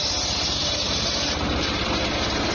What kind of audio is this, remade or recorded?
recorded